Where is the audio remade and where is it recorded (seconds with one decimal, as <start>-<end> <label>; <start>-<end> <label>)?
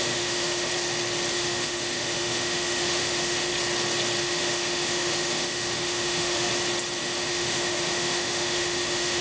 0.0-0.7 remade; 0.7-1.3 recorded; 1.3-3.5 remade; 3.5-4.2 recorded; 4.2-6.5 remade; 6.5-7.0 recorded; 7.0-9.2 remade